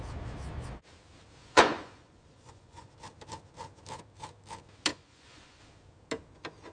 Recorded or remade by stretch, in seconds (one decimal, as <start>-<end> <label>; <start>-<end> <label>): 0.0-1.4 recorded; 1.4-2.9 remade; 2.9-4.9 recorded; 4.9-5.6 remade; 5.6-6.7 recorded

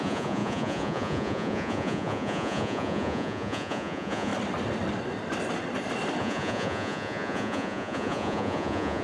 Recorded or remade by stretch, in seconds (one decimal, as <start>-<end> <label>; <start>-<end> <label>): 0.0-4.3 remade; 4.3-6.2 recorded; 6.2-9.0 remade